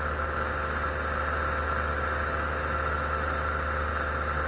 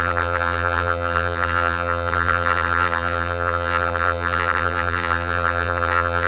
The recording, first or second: first